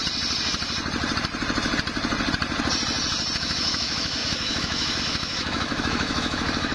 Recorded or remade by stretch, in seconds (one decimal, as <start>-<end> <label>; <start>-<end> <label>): 0.0-3.4 recorded; 3.4-6.7 remade